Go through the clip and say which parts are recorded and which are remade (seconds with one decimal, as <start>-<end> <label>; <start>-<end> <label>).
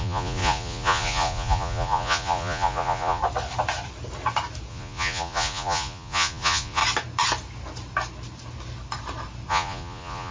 0.0-3.2 remade; 3.2-4.7 recorded; 4.7-6.8 remade; 6.8-9.5 recorded; 9.5-10.3 remade